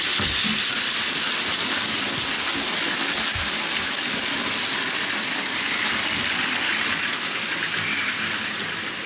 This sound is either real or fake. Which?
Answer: real